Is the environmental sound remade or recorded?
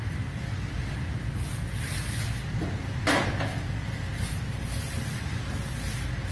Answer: recorded